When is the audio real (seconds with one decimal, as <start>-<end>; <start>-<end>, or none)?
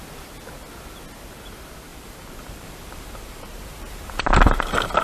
0.0-1.9; 4.2-5.0